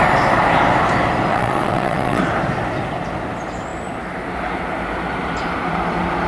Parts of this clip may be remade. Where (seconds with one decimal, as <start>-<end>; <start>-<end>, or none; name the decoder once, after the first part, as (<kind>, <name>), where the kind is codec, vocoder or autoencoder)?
1.3-2.2 (vocoder, WaveNeXt)